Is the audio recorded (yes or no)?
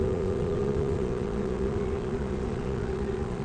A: no